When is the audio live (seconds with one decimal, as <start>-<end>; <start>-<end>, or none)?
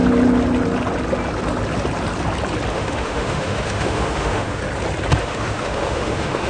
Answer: 0.0-2.7; 4.6-5.2